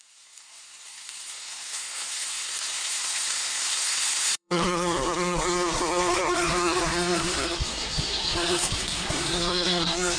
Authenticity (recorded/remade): remade